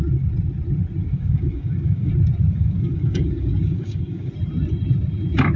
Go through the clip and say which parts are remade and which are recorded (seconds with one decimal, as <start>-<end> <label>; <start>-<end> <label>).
0.0-1.0 recorded; 1.0-2.1 remade; 2.1-2.5 recorded; 2.5-4.3 remade; 4.3-5.6 recorded